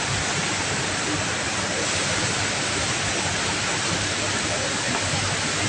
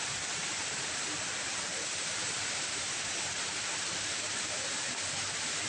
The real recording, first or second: first